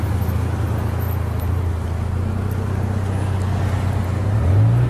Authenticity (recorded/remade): recorded